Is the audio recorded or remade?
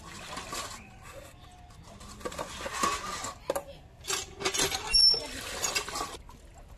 recorded